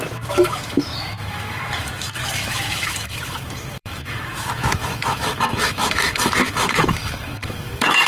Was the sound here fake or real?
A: fake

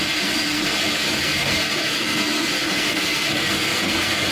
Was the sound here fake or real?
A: fake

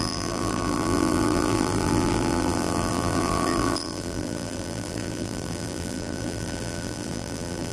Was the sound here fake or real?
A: fake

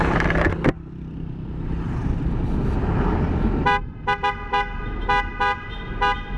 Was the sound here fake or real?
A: real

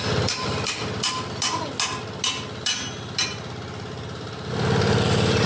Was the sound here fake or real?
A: real